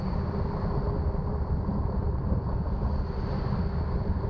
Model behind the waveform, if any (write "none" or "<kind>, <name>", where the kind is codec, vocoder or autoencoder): none